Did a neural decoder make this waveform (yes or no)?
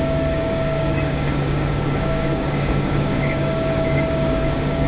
yes